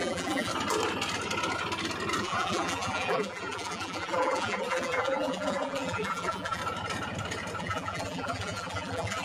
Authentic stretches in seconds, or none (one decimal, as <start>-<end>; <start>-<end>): 0.5-2.2; 6.6-7.6